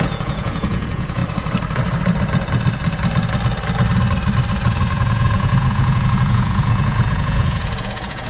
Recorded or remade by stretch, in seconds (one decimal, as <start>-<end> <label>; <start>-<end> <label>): 0.0-1.2 remade; 1.2-4.5 recorded; 4.5-8.3 remade